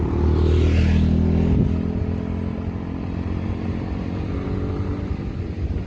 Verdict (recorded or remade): recorded